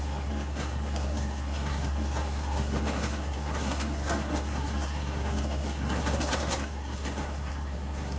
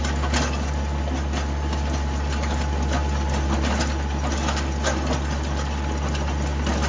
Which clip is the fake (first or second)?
first